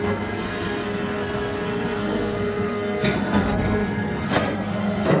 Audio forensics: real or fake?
fake